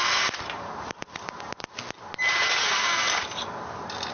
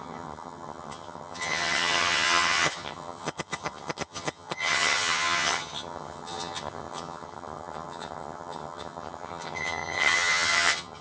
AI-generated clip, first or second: second